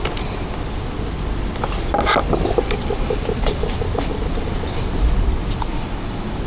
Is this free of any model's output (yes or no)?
yes